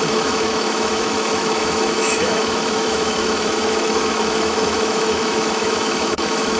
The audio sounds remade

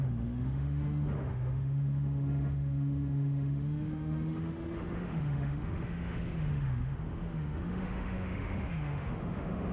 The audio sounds remade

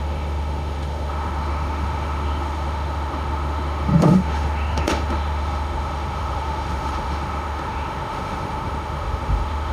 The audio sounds remade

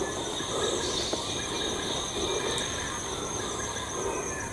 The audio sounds recorded